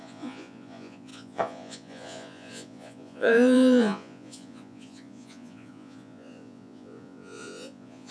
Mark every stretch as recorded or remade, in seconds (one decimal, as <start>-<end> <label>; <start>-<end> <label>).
0.0-8.1 remade